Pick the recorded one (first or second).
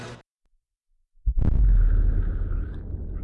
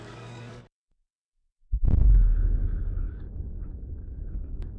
first